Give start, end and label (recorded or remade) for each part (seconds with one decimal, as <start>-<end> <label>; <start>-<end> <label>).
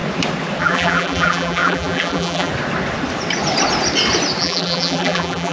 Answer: 0.0-0.6 recorded; 0.6-2.5 remade; 2.5-4.4 recorded; 4.4-5.5 remade